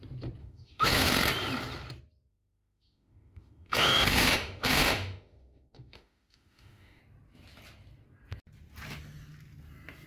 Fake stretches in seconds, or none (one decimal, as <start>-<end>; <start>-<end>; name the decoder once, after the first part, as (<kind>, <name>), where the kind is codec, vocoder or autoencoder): 0.4-1.1 (autoencoder, DAC-VAE); 2.3-7.0